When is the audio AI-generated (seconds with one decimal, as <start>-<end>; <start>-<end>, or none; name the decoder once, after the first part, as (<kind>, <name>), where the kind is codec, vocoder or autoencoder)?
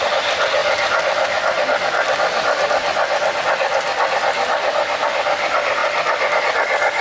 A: none